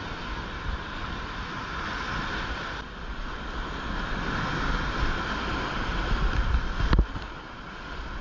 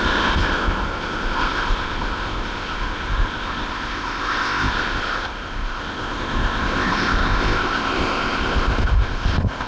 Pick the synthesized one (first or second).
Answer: second